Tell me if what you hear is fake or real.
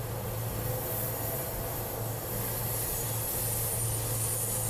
real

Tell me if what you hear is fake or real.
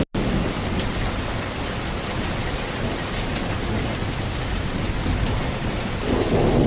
real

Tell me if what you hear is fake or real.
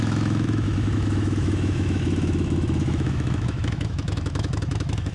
fake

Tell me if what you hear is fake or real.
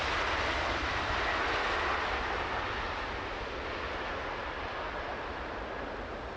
real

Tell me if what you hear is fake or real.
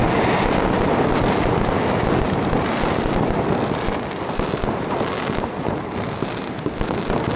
real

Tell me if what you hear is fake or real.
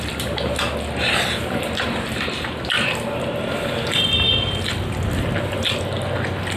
real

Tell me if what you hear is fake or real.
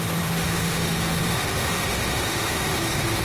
fake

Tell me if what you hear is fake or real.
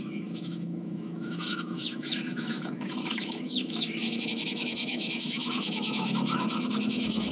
fake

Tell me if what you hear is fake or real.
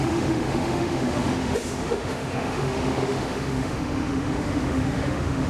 fake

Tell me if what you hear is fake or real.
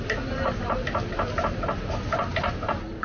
real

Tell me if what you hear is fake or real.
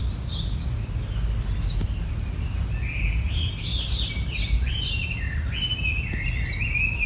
real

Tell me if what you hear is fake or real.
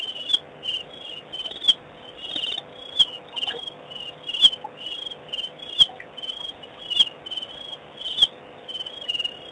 real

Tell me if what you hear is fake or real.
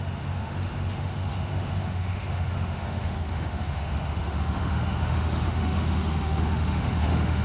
fake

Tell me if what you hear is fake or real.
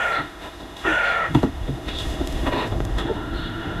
fake